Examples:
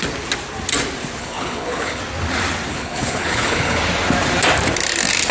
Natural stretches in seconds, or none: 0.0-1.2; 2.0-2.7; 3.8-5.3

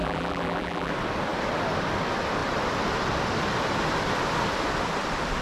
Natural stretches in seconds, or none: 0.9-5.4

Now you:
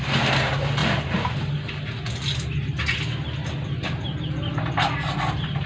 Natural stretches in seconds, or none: 0.0-5.7